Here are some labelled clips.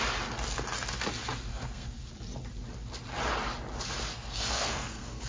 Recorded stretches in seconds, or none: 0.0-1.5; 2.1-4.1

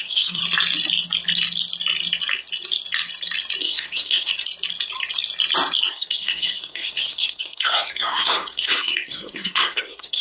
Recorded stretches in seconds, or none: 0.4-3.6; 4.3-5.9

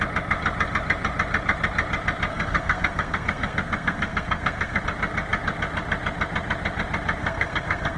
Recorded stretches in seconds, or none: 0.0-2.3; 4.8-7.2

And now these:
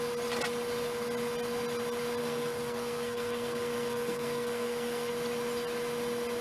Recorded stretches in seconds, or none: 0.0-2.2; 5.1-6.4